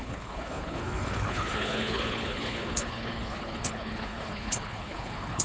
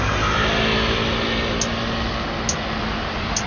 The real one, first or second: second